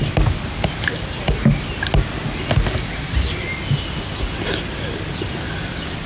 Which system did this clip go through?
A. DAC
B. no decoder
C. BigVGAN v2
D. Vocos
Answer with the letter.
B